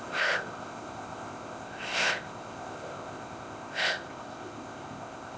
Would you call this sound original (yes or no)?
no